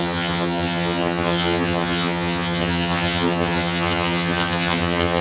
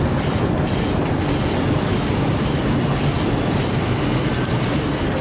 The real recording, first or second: second